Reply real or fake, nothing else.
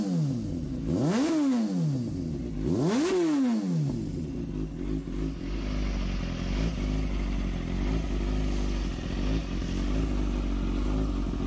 real